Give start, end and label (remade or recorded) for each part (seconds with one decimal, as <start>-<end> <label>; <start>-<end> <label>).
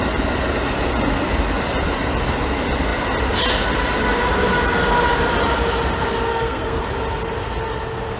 0.0-6.3 recorded; 6.3-6.8 remade; 6.8-8.2 recorded